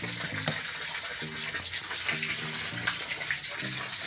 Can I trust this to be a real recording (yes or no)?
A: yes